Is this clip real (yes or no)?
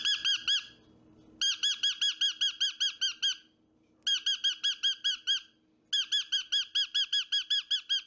yes